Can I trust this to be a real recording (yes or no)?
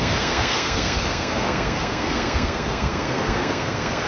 no